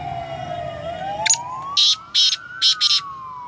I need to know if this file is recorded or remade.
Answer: recorded